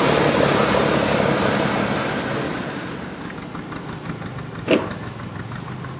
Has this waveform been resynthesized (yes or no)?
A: no